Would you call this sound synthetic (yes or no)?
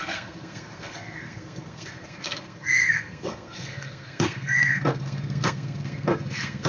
yes